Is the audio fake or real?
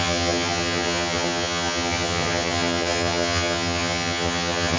fake